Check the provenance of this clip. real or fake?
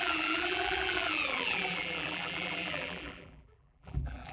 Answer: fake